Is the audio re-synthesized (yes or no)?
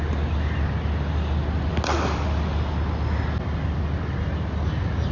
no